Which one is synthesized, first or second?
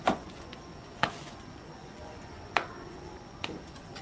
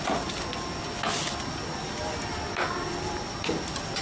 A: first